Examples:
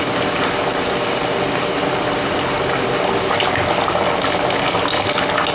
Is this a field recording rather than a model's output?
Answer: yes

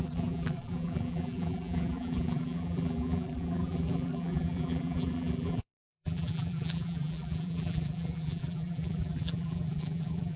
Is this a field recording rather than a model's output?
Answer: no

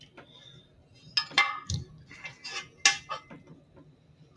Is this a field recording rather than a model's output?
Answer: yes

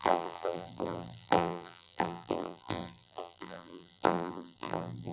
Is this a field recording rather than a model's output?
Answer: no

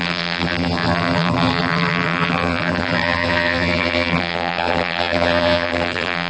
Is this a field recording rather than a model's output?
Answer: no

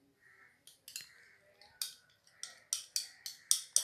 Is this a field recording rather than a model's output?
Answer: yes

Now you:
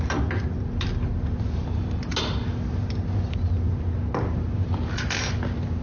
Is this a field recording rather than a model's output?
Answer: yes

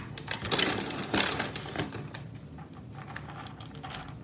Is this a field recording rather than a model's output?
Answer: yes